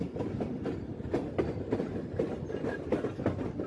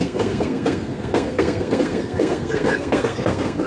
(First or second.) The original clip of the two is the first